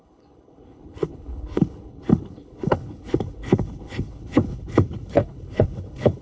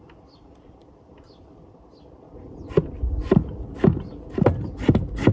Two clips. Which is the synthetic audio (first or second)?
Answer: first